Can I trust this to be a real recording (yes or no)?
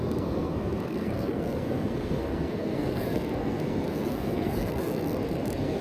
no